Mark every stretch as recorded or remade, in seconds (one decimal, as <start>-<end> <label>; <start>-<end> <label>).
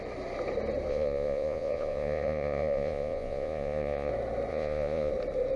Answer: 0.0-0.9 recorded; 0.9-4.1 remade; 4.1-4.5 recorded; 4.5-5.1 remade; 5.1-5.6 recorded